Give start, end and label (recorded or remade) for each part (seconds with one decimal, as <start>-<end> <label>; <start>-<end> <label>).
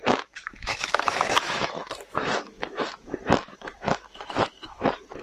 0.0-5.2 remade